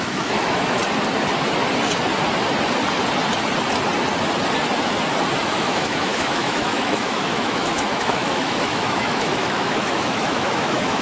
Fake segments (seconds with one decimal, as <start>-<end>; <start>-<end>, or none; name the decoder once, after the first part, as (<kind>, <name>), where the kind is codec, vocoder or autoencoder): 0.0-0.8 (autoencoder, DAC-VAE); 5.4-11.0